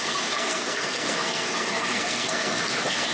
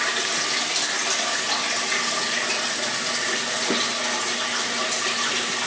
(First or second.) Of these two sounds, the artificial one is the first